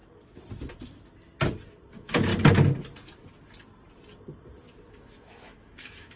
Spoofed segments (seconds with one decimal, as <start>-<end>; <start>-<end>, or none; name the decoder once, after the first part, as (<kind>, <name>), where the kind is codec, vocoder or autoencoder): 1.9-2.3 (autoencoder, DAC-VAE); 4.9-6.2